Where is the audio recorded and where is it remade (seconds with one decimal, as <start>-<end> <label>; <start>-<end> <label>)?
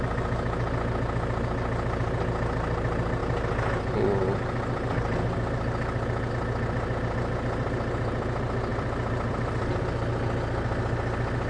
0.0-8.7 recorded; 8.7-9.8 remade; 9.8-11.5 recorded